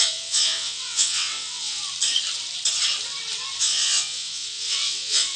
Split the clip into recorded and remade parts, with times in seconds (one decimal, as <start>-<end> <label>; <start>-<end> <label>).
0.0-1.8 remade; 1.8-3.6 recorded; 3.6-5.4 remade